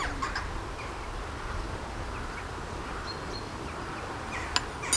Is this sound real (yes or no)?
yes